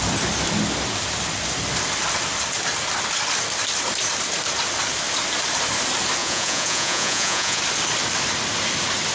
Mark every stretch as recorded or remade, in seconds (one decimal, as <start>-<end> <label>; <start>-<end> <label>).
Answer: 0.0-6.2 recorded; 6.2-7.6 remade; 7.6-9.1 recorded